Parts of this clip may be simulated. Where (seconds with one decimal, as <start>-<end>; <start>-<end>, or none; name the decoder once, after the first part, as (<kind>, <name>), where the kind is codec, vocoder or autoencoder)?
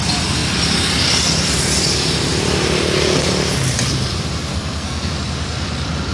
4.5-5.1 (codec, SNAC)